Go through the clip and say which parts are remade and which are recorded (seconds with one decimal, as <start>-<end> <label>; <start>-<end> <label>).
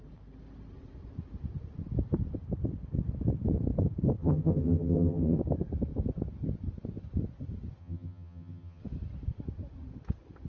0.0-4.2 recorded; 4.2-5.4 remade; 5.4-7.8 recorded; 7.8-8.8 remade; 8.8-10.5 recorded